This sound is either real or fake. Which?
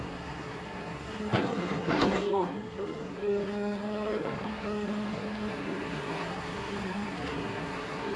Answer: fake